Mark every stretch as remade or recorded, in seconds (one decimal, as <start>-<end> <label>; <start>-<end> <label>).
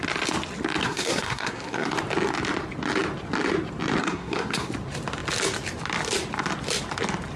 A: 0.0-0.8 recorded; 0.8-1.9 remade; 1.9-4.0 recorded; 4.0-4.7 remade; 4.7-7.4 recorded